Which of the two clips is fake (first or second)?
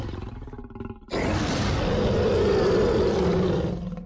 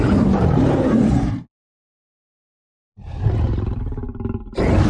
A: second